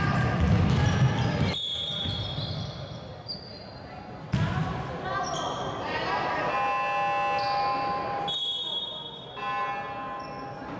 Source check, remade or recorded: recorded